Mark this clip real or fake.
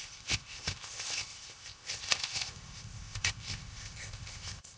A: fake